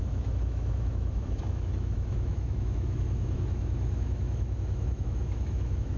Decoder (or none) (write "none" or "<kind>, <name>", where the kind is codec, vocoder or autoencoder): autoencoder, DAC-VAE